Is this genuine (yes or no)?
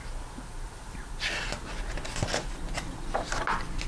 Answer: yes